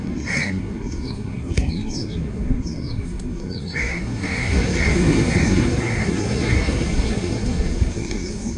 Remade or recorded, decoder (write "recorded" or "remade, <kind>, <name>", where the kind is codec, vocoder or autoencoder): remade, codec, SNAC